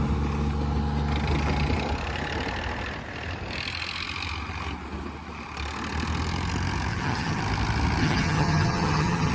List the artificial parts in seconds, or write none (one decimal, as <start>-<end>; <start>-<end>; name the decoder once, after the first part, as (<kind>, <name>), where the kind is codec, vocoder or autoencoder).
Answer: 6.9-7.4 (vocoder, HiFi-GAN); 8.0-9.3